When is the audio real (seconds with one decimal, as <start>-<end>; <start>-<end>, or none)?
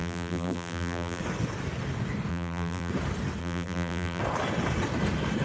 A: 1.2-2.3; 2.9-3.4; 4.2-5.4